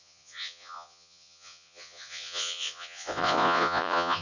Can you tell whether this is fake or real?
fake